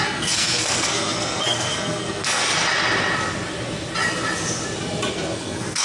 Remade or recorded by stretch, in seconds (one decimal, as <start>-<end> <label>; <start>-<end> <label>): 0.0-2.4 remade; 2.4-5.1 recorded; 5.1-5.8 remade